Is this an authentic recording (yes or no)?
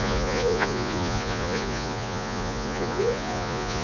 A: no